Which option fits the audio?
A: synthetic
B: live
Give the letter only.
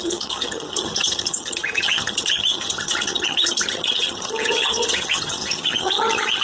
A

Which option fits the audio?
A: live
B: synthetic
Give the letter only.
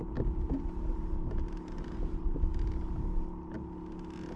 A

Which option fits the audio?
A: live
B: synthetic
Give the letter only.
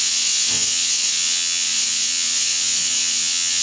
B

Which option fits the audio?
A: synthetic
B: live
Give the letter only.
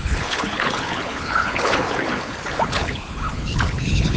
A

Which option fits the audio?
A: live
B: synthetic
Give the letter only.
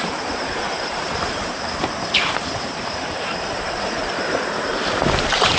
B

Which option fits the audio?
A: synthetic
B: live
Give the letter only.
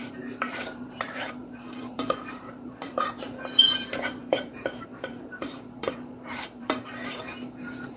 A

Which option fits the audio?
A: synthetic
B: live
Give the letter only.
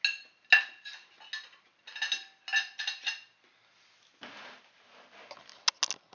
B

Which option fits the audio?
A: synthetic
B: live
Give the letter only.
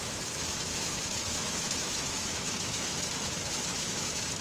A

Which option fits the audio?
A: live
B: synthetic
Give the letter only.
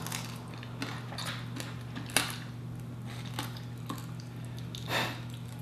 A